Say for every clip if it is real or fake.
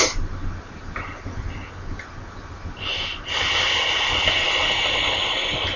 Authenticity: real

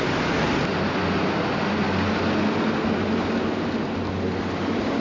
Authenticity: real